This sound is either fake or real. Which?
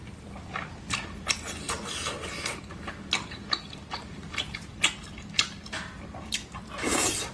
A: real